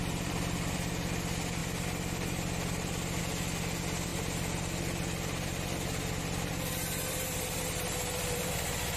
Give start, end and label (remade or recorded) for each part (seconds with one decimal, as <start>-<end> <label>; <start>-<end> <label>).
0.0-0.9 remade; 0.9-1.6 recorded; 1.6-3.2 remade; 3.2-4.1 recorded; 4.1-8.5 remade; 8.5-9.0 recorded